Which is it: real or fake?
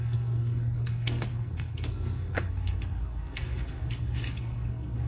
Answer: fake